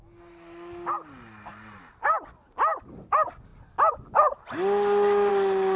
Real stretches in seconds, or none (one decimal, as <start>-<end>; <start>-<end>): 0.0-5.8